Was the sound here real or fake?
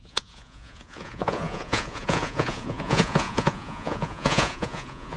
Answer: fake